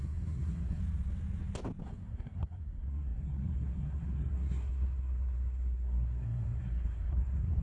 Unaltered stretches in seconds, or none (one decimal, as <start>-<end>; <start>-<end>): 0.8-1.8